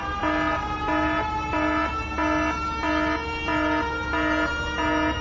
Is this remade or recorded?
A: recorded